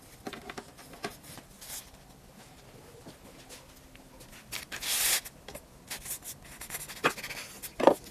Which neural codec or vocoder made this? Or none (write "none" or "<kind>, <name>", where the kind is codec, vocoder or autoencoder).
none